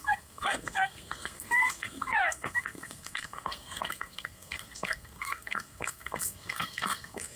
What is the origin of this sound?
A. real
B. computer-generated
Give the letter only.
B